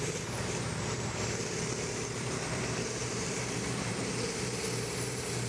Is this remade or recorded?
remade